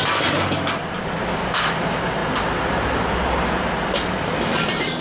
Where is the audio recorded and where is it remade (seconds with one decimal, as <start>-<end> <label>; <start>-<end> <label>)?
0.0-5.0 recorded